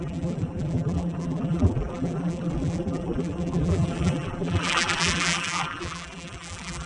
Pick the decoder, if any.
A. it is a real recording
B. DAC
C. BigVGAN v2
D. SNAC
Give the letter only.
C